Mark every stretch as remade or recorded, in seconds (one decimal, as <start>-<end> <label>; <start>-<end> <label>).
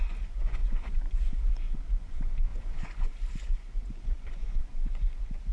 0.0-5.5 remade